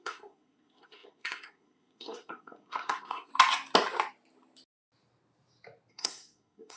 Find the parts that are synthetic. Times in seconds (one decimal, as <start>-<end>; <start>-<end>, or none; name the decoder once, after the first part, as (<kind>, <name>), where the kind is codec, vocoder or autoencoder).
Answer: 0.0-3.3 (codec, SNAC); 5.9-6.8

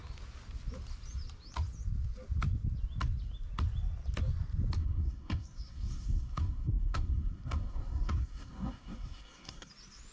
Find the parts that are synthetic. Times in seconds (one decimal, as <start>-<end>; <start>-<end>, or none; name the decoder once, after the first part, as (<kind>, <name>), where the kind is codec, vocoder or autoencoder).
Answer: 4.8-9.7 (codec, SNAC)

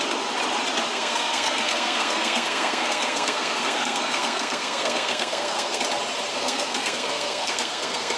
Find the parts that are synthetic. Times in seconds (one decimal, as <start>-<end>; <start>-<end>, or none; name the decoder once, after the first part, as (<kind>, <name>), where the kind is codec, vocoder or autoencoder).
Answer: 0.9-5.8 (codec, SNAC); 6.3-8.2

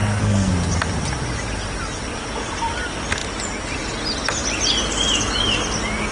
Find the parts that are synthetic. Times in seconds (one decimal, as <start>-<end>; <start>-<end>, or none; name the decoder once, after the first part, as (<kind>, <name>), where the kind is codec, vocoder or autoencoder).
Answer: 0.0-0.5 (codec, SNAC)